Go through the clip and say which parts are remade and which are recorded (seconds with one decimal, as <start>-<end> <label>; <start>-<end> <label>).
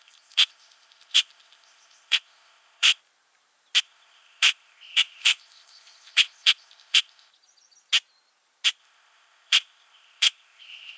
0.0-3.0 remade; 3.0-3.8 recorded; 3.8-7.3 remade; 7.3-8.8 recorded; 8.8-11.0 remade